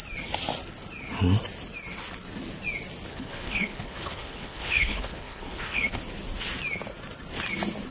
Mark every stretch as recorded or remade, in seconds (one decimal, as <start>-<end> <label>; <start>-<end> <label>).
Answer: 0.0-3.1 recorded; 3.1-6.0 remade; 6.0-7.9 recorded